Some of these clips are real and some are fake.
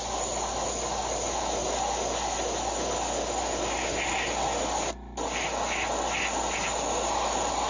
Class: real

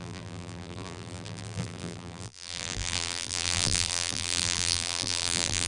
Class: fake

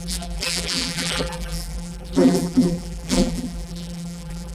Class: fake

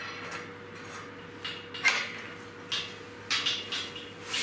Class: real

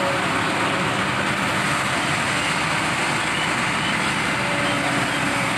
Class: real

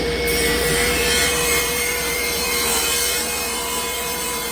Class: fake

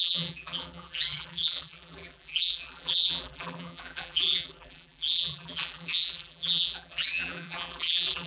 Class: fake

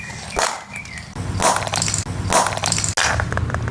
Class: real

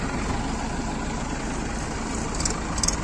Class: real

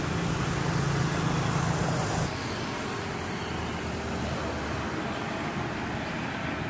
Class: real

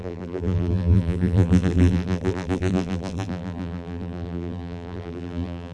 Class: fake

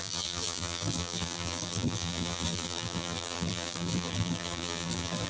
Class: fake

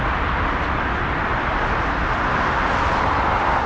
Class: real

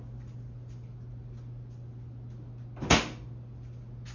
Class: real